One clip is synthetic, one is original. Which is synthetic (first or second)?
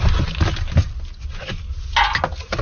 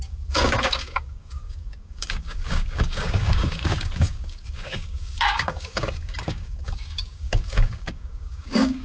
second